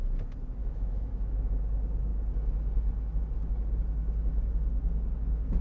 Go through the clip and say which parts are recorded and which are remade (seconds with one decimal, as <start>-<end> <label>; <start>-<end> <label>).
0.0-0.6 recorded; 0.6-1.6 remade; 1.6-5.6 recorded